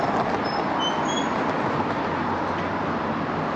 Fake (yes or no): no